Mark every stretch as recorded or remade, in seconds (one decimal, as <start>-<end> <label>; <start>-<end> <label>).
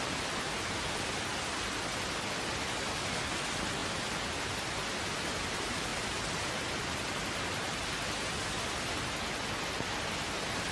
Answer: 0.0-10.7 recorded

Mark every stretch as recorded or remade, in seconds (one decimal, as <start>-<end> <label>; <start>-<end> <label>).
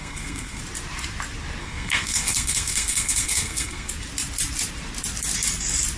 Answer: 0.0-0.6 remade; 0.6-1.6 recorded; 1.6-3.9 remade; 3.9-6.0 recorded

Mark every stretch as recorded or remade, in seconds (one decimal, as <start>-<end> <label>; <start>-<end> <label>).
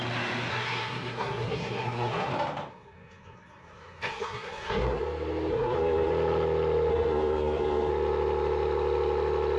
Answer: 0.0-0.5 recorded; 0.5-2.3 remade; 2.3-2.7 recorded; 2.7-5.0 remade; 5.0-5.5 recorded; 5.5-6.1 remade; 6.1-6.9 recorded; 6.9-7.9 remade; 7.9-9.6 recorded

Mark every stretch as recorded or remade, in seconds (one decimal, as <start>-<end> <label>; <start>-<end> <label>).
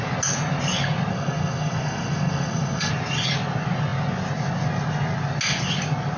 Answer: 0.0-1.1 recorded; 1.1-2.9 remade; 2.9-6.2 recorded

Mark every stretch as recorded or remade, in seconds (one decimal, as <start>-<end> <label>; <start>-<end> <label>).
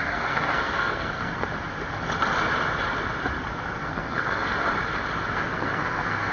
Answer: 0.0-1.5 remade; 1.5-3.8 recorded; 3.8-4.5 remade; 4.5-5.3 recorded; 5.3-6.3 remade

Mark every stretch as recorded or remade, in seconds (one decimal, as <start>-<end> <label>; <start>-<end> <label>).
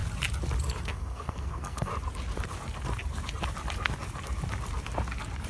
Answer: 0.0-0.8 recorded; 0.8-1.9 remade; 1.9-5.5 recorded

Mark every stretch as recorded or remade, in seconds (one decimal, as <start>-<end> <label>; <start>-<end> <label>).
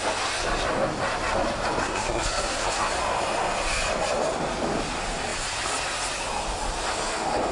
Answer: 0.0-1.8 recorded; 1.8-2.9 remade; 2.9-7.5 recorded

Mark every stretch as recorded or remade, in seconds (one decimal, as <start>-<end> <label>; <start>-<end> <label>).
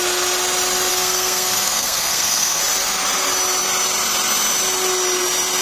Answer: 0.0-0.9 recorded; 0.9-2.6 remade; 2.6-5.6 recorded